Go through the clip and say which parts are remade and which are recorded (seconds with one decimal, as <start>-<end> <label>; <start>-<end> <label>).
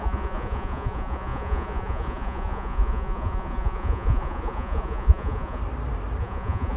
0.0-5.6 remade; 5.6-6.2 recorded; 6.2-6.8 remade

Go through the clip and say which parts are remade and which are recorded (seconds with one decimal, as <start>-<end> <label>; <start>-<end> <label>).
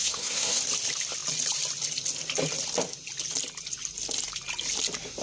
0.0-0.6 remade; 0.6-5.2 recorded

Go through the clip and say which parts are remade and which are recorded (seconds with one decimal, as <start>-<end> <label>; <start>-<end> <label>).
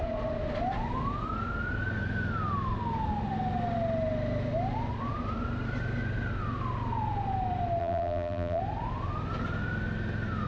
0.0-7.8 recorded; 7.8-8.6 remade; 8.6-10.5 recorded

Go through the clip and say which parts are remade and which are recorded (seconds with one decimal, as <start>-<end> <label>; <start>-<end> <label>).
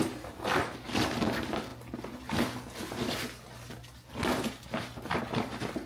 0.0-5.9 recorded